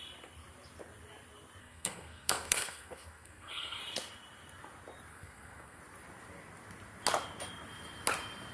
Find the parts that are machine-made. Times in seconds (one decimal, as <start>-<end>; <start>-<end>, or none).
1.6-3.8; 5.1-5.8